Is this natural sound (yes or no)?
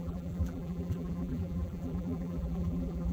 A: no